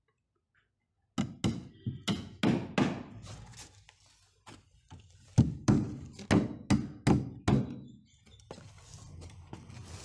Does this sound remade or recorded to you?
recorded